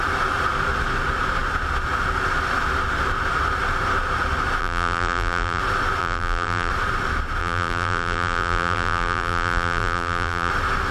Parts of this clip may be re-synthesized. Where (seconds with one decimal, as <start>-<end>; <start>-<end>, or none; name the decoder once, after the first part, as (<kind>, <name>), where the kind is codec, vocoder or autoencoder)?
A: 4.6-5.6 (vocoder, BigVGAN v2); 6.0-6.7; 7.4-10.5